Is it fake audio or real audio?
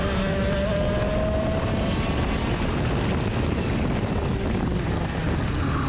real